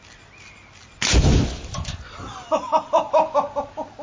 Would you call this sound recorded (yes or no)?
yes